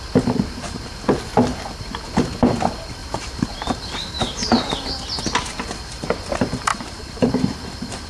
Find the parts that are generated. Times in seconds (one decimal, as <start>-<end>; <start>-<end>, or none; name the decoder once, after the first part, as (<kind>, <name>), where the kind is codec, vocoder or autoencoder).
1.5-2.1 (vocoder, BigVGAN v2); 3.0-4.9; 6.7-7.3